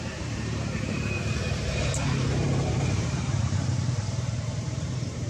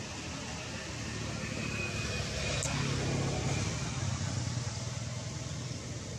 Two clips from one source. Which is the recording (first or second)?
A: second